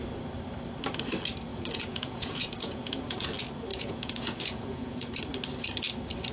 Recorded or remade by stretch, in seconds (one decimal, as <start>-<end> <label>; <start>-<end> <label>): 0.0-1.5 recorded; 1.5-3.3 remade; 3.3-3.7 recorded; 3.7-5.1 remade; 5.1-6.3 recorded